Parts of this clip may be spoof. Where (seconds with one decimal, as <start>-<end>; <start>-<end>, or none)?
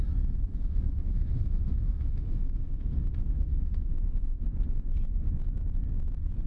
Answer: 0.5-4.4